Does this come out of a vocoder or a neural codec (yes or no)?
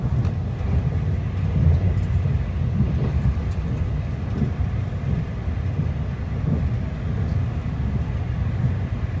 no